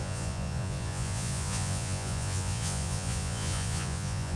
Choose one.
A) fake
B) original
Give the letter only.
A